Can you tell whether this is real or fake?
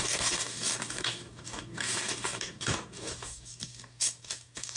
fake